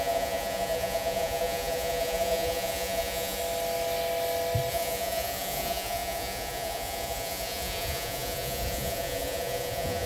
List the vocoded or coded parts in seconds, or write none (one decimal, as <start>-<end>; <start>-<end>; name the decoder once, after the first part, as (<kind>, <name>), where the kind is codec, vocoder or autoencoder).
0.0-3.4 (vocoder, Vocos); 4.7-10.1